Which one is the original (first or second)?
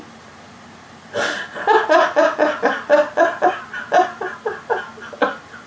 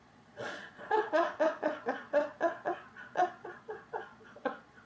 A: first